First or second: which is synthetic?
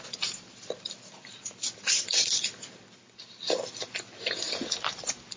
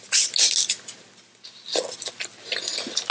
first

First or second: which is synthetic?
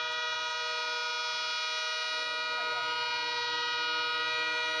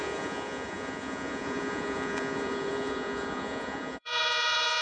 second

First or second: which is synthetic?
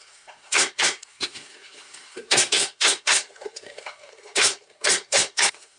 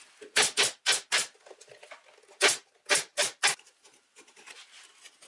first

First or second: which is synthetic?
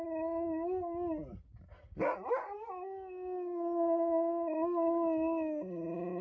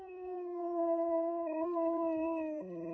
second